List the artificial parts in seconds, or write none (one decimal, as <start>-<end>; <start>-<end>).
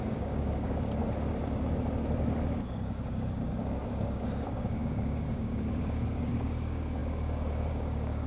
0.0-1.0; 2.4-8.3